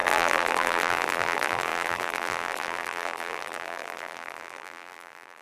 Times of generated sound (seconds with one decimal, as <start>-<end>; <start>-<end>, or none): 0.0-5.4